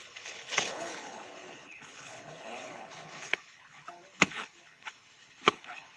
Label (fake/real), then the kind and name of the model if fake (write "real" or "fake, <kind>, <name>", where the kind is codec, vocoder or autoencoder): fake, codec, HILCodec